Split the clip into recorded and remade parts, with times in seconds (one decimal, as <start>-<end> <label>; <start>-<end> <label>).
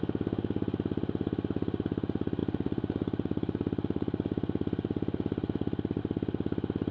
0.0-2.4 recorded; 2.4-6.0 remade; 6.0-6.9 recorded